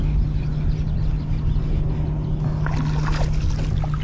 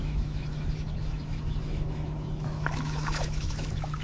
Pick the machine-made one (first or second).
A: second